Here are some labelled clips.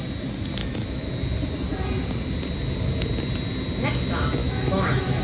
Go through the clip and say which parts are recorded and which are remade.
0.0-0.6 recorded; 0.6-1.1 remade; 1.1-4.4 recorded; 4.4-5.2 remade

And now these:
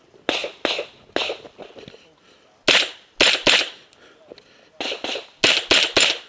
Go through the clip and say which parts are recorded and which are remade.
0.0-6.3 recorded

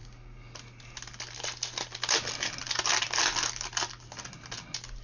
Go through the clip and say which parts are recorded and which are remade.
0.0-5.0 recorded

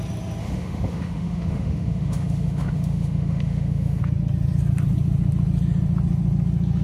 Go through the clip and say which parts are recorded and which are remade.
0.0-0.4 recorded; 0.4-4.0 remade; 4.0-6.8 recorded

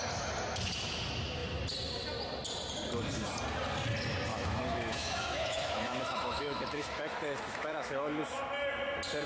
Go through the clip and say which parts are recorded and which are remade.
0.0-4.3 recorded; 4.3-8.2 remade; 8.2-9.3 recorded